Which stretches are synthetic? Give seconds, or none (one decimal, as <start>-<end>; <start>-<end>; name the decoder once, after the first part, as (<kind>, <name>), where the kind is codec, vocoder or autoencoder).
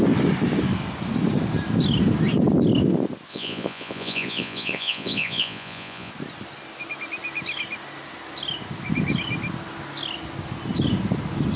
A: 3.3-6.1 (vocoder, Vocos)